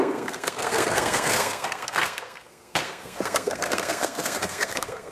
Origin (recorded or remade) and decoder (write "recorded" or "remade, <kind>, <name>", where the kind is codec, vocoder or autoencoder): remade, codec, SNAC